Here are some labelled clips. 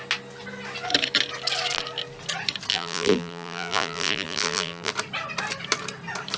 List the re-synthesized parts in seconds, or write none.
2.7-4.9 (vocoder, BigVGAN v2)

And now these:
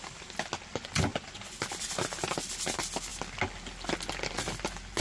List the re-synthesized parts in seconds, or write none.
1.1-1.6 (vocoder, Vocos)

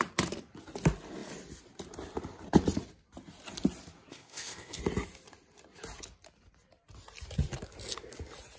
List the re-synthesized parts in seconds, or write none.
4.1-4.8 (codec, ZipCodec)